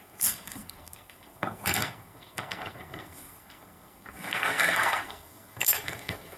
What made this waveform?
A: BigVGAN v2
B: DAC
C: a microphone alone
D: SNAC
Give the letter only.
D